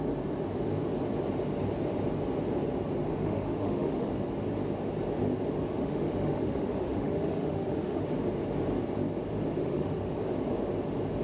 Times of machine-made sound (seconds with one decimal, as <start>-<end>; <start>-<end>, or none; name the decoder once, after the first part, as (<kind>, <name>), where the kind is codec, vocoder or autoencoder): 3.1-4.1 (autoencoder, DAC-VAE); 5.8-8.0; 9.6-10.1